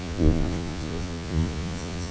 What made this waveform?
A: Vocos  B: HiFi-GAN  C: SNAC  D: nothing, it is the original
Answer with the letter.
A